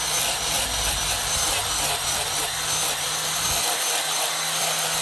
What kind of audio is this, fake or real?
real